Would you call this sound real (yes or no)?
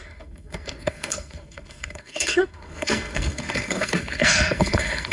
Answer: no